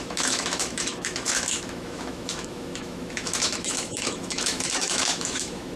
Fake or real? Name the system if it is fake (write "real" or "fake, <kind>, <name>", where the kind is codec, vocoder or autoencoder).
fake, autoencoder, DAC-VAE